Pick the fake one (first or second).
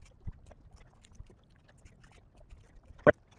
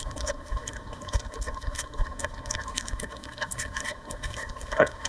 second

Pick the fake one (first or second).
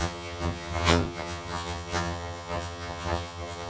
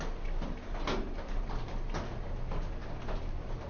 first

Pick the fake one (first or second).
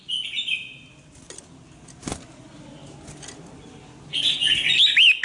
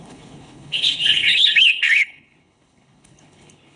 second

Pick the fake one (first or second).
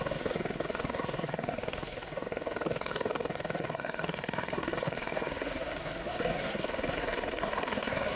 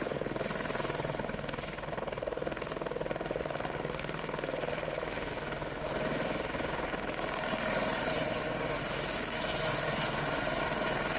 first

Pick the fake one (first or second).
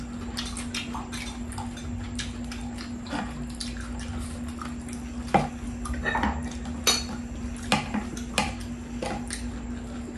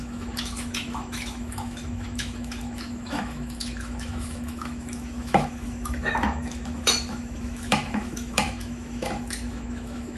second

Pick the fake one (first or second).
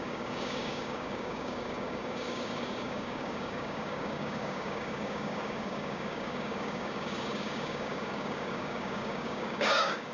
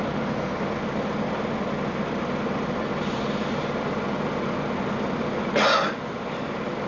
first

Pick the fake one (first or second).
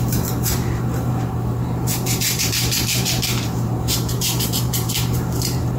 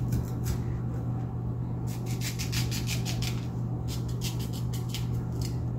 first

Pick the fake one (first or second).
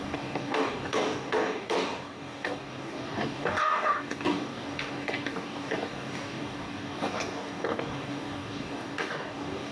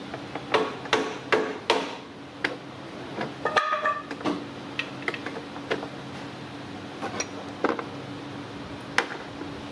first